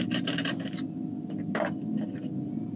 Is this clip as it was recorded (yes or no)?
yes